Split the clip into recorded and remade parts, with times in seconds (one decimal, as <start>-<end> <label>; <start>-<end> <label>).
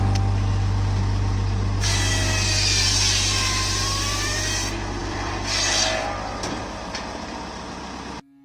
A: 0.0-5.0 recorded; 5.0-7.6 remade; 7.6-8.4 recorded